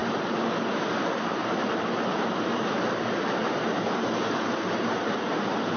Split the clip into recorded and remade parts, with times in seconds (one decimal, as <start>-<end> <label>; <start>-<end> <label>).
0.0-0.7 recorded; 0.7-5.8 remade